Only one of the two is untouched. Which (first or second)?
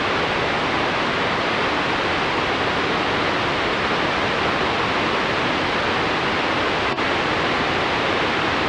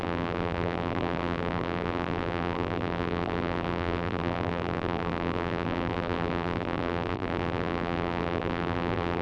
first